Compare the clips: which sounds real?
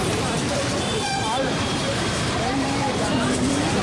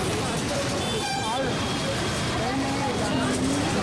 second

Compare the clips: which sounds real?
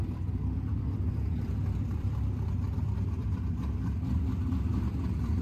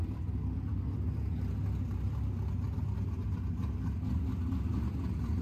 second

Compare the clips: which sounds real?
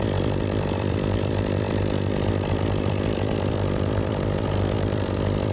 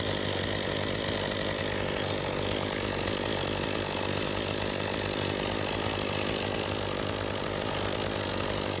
second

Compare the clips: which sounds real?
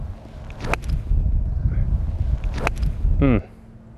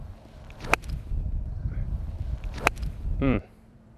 first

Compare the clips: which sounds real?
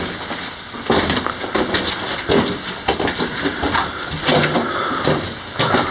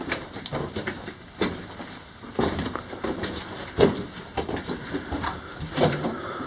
first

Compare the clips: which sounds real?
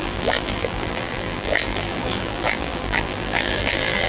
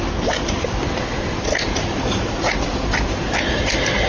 second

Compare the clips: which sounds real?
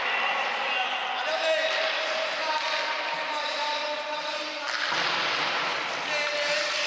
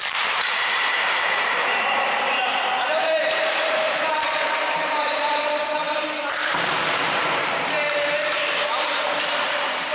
first